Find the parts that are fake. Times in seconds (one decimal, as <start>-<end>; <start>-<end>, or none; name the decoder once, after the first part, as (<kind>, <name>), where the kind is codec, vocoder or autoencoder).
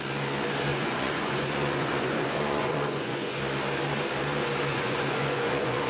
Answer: 0.7-3.4 (vocoder, Vocos); 4.7-5.9